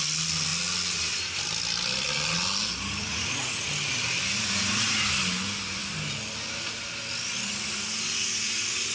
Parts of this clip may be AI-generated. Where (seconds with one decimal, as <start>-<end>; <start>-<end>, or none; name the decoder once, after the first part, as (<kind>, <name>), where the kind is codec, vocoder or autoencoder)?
3.0-3.7 (vocoder, Vocos)